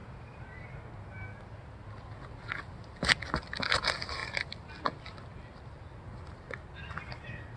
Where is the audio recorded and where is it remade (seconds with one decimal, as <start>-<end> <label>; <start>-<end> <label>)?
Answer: 0.0-7.6 recorded